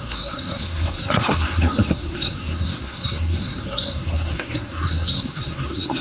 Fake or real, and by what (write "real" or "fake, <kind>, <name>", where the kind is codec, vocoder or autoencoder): fake, codec, SNAC